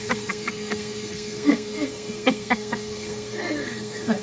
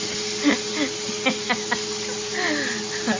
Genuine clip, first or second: second